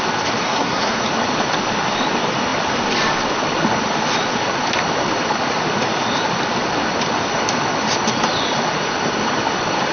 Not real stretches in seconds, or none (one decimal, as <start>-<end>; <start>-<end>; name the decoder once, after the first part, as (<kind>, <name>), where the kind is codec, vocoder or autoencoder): 0.4-1.0 (codec, SNAC)